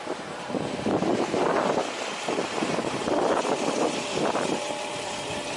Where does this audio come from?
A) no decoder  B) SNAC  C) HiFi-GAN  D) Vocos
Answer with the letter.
A